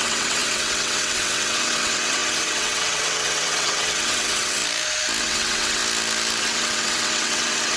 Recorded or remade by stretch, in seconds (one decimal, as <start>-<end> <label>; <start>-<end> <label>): 0.0-4.6 remade; 4.6-5.2 recorded; 5.2-5.8 remade; 5.8-6.4 recorded; 6.4-7.8 remade